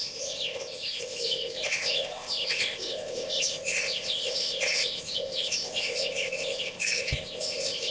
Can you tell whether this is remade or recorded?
remade